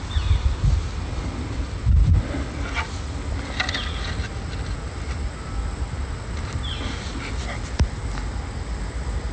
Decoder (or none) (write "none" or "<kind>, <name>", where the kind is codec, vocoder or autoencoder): none